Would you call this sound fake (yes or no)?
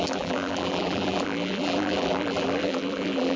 yes